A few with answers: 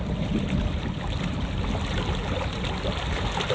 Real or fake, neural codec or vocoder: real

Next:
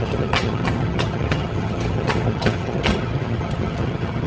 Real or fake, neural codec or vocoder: fake, vocoder, HiFi-GAN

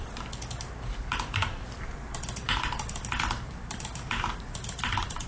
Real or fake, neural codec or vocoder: fake, vocoder, BigVGAN v2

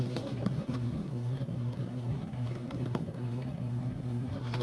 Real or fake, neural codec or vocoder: fake, codec, SNAC